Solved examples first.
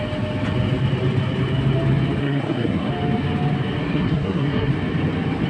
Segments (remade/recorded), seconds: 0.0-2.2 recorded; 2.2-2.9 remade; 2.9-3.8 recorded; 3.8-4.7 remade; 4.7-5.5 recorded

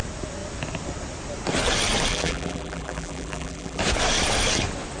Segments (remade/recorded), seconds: 0.0-2.1 recorded; 2.1-3.8 remade; 3.8-5.0 recorded

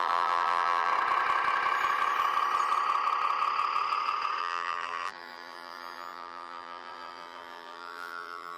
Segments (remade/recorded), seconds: 0.0-0.9 remade; 0.9-4.4 recorded; 4.4-8.6 remade

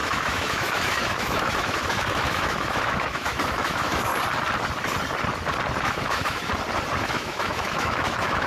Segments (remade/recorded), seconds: 0.0-4.1 remade; 4.1-5.8 recorded; 5.8-6.5 remade; 6.5-7.0 recorded; 7.0-8.5 remade

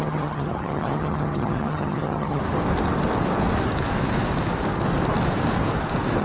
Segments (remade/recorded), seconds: 0.0-2.4 remade; 2.4-6.2 recorded

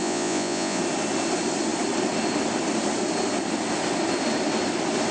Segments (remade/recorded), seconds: 0.0-0.8 remade; 0.8-5.1 recorded

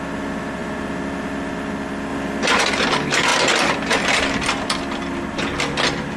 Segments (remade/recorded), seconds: 0.0-6.2 recorded